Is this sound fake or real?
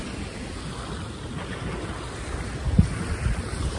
real